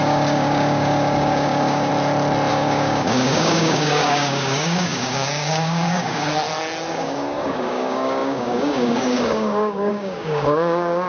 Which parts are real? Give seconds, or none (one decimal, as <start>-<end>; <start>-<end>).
1.9-2.5; 6.3-6.9